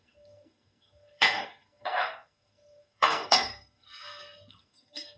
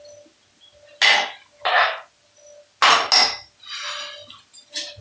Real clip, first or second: second